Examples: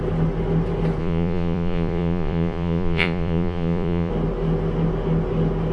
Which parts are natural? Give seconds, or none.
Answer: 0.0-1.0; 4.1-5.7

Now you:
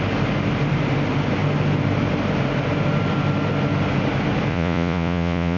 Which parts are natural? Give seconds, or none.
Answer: 0.0-4.5

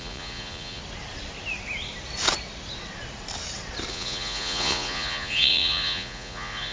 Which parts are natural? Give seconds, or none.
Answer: 0.8-3.9

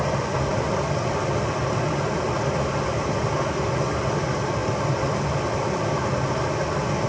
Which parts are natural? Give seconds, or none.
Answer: 0.0-7.1

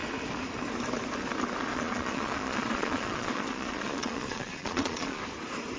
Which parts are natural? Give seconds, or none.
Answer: 0.0-1.7; 5.2-5.8

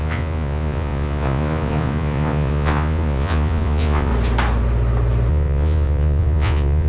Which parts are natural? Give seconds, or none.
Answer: 4.1-5.3